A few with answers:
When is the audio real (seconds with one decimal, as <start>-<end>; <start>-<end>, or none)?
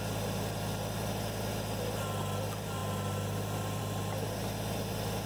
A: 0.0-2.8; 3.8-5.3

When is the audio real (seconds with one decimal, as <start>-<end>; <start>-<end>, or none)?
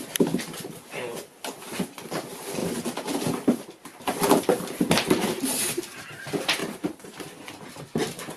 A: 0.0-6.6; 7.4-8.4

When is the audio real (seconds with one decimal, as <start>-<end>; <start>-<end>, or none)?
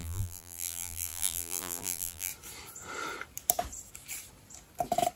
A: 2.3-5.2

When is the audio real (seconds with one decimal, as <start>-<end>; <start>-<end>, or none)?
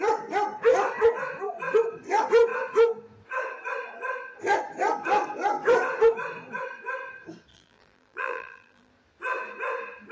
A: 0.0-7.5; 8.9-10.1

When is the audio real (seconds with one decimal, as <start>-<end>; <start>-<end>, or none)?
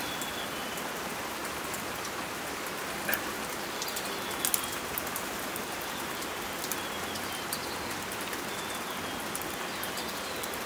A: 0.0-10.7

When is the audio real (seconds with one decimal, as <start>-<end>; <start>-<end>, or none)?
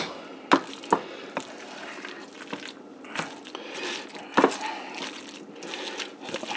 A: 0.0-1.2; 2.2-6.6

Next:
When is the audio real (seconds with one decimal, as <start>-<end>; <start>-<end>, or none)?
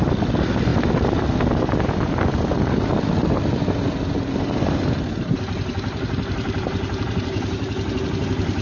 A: 0.0-3.2; 8.0-8.6